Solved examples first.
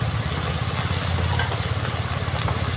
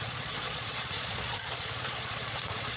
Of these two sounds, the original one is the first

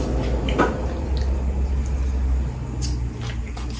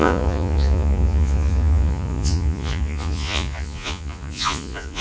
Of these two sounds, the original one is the first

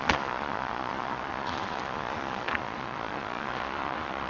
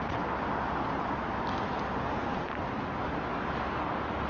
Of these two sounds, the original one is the second